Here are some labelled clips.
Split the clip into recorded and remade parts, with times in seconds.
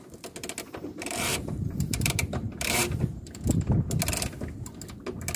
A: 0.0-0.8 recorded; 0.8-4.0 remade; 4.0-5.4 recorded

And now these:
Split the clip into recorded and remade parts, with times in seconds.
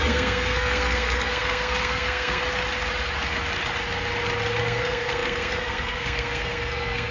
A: 0.0-2.4 remade; 2.4-4.6 recorded; 4.6-7.1 remade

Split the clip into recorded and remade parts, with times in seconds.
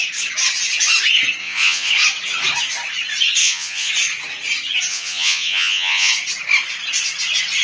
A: 0.0-1.4 recorded; 1.4-1.9 remade; 1.9-3.4 recorded; 3.4-3.9 remade; 3.9-4.9 recorded; 4.9-6.1 remade; 6.1-7.6 recorded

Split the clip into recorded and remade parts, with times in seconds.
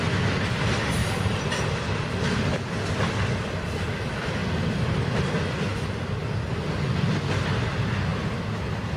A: 0.0-1.0 recorded; 1.0-2.1 remade; 2.1-5.7 recorded; 5.7-6.6 remade; 6.6-9.0 recorded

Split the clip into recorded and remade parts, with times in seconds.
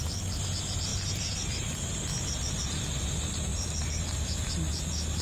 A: 0.0-0.9 recorded; 0.9-1.7 remade; 1.7-3.5 recorded; 3.5-4.5 remade; 4.5-5.2 recorded